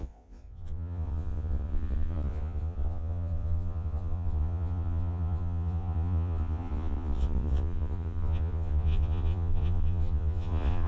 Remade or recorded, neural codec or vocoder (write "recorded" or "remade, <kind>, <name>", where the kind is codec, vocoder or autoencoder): remade, vocoder, Vocos